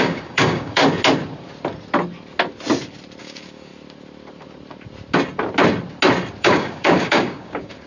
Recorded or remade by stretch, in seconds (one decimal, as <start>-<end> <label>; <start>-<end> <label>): 0.0-0.8 remade; 0.8-3.2 recorded; 3.2-3.7 remade; 3.7-6.4 recorded; 6.4-7.9 remade